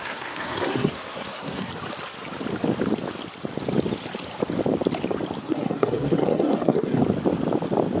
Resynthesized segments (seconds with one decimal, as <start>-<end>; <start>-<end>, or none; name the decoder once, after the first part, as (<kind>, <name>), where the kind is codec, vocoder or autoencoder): 0.0-1.7 (codec, SNAC); 5.4-7.0